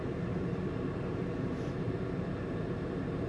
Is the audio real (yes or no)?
yes